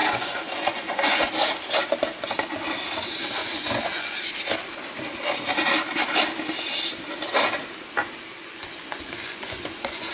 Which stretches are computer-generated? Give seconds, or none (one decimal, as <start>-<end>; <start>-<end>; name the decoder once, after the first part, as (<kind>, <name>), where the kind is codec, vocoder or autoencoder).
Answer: 0.0-1.3 (vocoder, Vocos); 3.4-4.2; 8.4-10.1